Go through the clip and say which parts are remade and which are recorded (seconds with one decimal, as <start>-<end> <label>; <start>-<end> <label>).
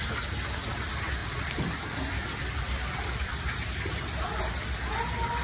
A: 0.0-1.2 recorded; 1.2-4.4 remade; 4.4-5.4 recorded